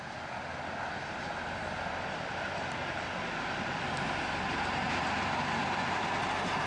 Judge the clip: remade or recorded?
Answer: recorded